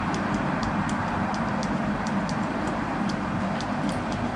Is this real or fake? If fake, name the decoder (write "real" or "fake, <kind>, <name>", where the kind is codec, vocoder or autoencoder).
fake, vocoder, BigVGAN v2